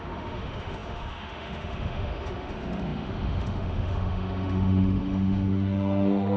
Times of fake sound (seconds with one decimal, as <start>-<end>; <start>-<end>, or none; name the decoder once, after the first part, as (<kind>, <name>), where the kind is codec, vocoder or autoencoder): 0.0-6.4 (autoencoder, DAC-VAE)